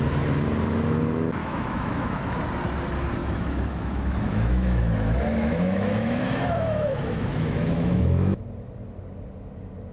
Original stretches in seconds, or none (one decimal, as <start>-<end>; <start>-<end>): 0.0-1.4; 2.4-3.2; 8.4-9.9